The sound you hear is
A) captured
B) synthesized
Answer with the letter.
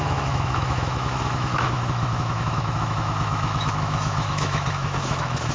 B